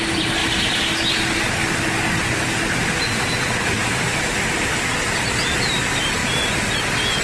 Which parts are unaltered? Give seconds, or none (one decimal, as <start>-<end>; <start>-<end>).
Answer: 0.0-7.2